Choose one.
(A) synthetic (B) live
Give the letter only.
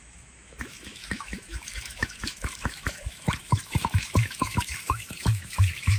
A